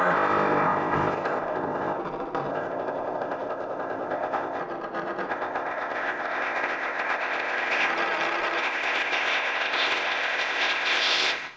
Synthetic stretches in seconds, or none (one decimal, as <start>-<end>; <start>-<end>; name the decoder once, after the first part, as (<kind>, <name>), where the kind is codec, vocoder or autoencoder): 0.0-2.0 (codec, ZipCodec); 2.5-4.6; 5.3-7.9; 8.6-11.6